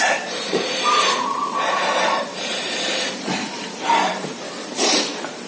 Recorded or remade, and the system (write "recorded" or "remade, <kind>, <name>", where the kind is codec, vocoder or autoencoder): remade, vocoder, BigVGAN v2